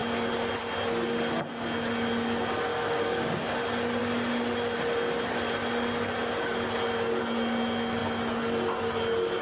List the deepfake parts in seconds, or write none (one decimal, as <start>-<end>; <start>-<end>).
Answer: 2.7-3.6